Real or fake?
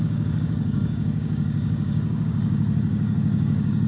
fake